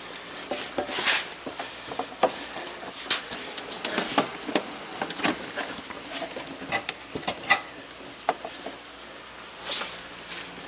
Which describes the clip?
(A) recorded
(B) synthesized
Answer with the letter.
A